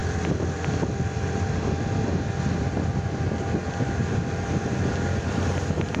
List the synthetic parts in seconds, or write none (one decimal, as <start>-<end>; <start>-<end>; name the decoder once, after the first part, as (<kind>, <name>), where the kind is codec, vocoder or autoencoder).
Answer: none